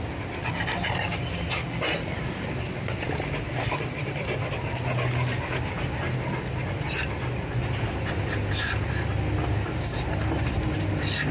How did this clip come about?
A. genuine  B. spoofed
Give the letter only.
A